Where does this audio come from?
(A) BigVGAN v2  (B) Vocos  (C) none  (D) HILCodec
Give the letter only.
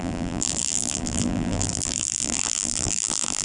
A